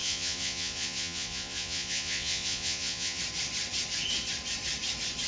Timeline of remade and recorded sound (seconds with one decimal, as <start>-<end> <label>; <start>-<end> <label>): 0.0-3.2 remade; 3.2-5.3 recorded